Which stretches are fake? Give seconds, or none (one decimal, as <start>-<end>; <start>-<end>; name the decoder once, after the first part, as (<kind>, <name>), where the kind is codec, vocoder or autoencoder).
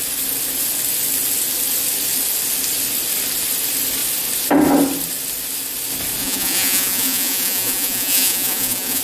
6.2-9.0 (vocoder, Vocos)